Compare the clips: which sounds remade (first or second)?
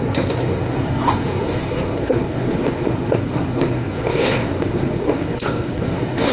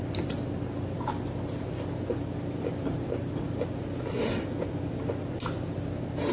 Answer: first